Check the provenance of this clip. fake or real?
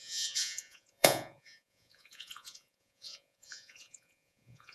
fake